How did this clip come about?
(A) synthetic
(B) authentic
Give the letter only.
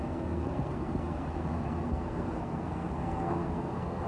A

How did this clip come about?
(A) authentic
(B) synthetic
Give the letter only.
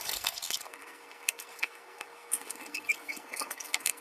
B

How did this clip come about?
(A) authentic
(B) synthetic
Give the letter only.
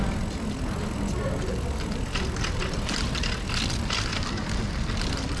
A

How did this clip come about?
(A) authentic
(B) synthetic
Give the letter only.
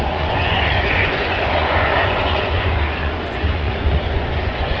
B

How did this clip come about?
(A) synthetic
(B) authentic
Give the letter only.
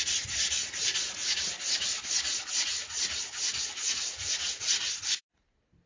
B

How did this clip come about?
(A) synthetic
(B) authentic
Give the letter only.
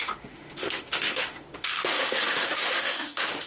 A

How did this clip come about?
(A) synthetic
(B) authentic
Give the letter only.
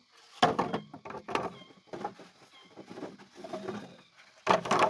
B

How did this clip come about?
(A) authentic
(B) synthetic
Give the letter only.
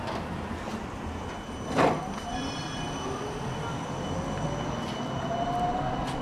A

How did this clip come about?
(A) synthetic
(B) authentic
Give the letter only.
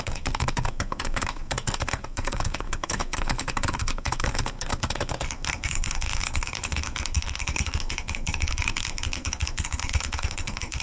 A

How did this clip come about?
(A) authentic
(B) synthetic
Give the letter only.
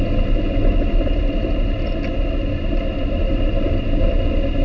A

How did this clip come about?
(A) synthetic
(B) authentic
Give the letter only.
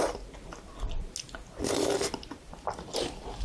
B